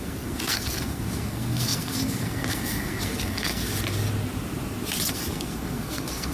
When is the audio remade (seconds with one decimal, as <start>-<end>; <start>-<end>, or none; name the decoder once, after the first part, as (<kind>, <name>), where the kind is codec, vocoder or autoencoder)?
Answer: 0.0-3.7 (codec, SNAC); 5.1-6.3